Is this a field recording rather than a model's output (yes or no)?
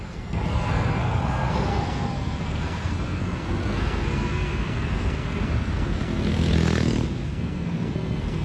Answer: no